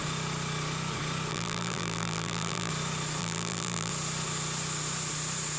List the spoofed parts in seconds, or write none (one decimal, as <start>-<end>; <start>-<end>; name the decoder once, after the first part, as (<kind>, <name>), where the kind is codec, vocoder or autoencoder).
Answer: 1.3-2.7 (vocoder, BigVGAN v2); 3.2-3.9